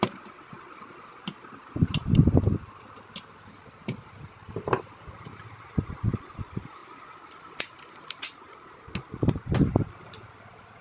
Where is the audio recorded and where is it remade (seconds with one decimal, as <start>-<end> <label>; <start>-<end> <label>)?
0.0-10.8 recorded